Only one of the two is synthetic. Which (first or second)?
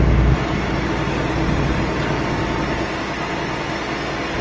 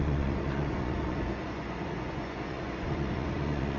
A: second